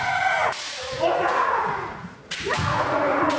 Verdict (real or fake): fake